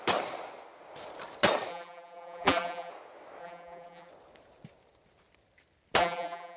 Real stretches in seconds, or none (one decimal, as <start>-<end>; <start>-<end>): 0.0-1.7; 2.9-3.4; 4.1-6.0